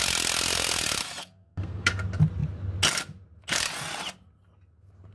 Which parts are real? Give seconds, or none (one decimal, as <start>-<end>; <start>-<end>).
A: 0.0-1.2; 1.9-5.1